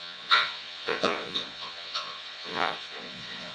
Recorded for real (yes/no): no